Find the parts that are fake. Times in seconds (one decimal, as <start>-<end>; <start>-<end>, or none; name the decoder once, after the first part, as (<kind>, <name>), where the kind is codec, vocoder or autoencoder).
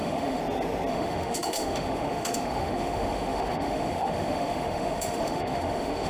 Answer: 0.0-0.4 (autoencoder, DAC-VAE); 0.9-6.1